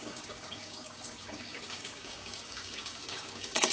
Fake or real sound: fake